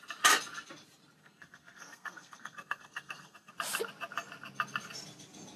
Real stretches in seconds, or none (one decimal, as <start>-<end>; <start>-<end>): 0.0-1.2; 3.5-5.6